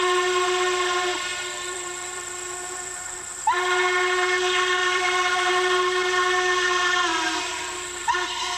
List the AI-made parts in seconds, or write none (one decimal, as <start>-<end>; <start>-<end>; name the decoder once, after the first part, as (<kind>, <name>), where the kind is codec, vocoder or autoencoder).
1.3-3.4 (vocoder, BigVGAN v2); 4.8-5.5; 7.1-8.6